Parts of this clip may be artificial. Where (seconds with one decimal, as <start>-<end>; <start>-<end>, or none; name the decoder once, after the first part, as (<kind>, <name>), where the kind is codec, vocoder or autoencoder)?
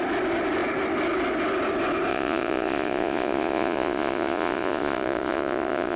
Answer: 2.1-6.0 (vocoder, Vocos)